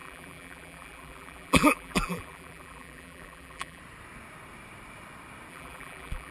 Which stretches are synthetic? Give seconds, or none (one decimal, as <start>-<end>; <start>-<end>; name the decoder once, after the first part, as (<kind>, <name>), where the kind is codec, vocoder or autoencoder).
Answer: 0.0-3.8 (vocoder, BigVGAN v2); 5.5-6.3